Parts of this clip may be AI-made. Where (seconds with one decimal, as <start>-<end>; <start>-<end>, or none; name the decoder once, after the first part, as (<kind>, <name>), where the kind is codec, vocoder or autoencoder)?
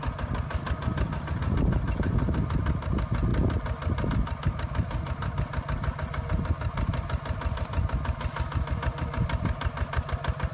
none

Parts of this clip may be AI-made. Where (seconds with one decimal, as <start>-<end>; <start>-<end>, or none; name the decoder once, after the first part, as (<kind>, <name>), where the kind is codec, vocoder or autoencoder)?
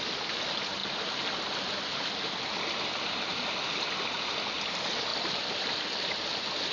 none